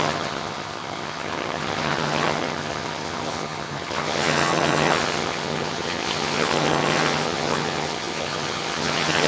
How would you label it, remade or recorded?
remade